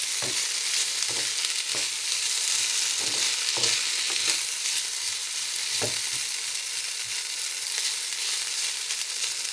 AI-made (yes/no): no